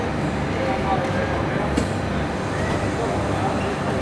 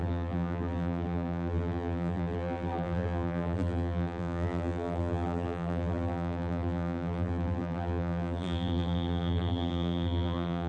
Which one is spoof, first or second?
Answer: second